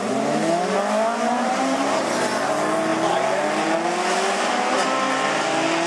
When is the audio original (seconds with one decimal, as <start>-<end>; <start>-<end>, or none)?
0.0-1.3; 2.1-5.9